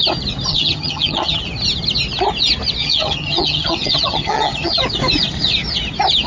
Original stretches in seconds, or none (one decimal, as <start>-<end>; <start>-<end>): 0.0-0.5; 1.4-2.8; 4.7-6.3

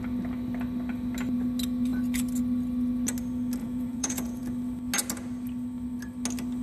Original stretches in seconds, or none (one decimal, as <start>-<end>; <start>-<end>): 0.0-3.6; 4.4-6.6

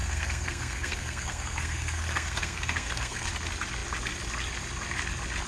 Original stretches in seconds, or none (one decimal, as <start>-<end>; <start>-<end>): 3.3-5.5

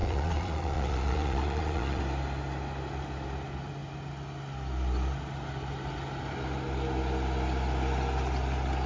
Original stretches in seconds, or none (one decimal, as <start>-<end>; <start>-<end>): 2.0-8.9

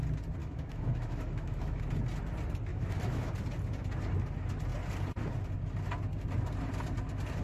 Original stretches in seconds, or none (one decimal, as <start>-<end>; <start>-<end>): 0.0-0.4; 1.8-2.7; 3.3-7.4

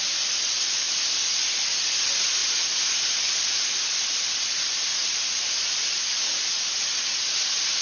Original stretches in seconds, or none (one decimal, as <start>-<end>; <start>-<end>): 0.0-7.8